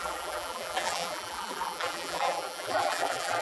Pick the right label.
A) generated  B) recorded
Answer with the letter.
A